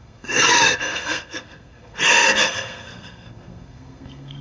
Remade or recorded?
remade